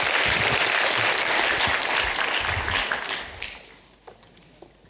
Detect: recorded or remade recorded